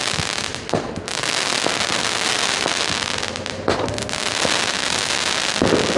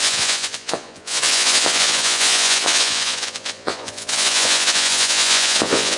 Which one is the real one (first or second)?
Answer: first